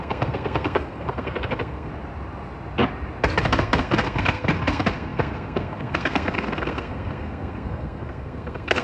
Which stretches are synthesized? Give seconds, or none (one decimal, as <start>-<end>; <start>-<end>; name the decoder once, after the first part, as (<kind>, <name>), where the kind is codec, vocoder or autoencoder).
0.0-1.9 (codec, SNAC); 3.4-8.8